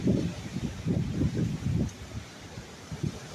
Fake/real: fake